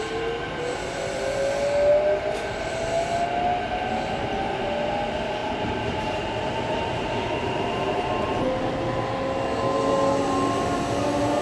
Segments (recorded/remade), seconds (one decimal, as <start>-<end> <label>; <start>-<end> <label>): 0.0-5.4 recorded; 5.4-8.4 remade; 8.4-11.4 recorded